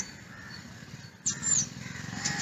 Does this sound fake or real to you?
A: fake